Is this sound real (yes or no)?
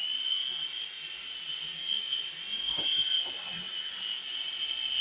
yes